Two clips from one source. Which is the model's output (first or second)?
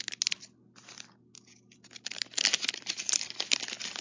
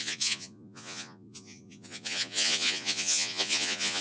second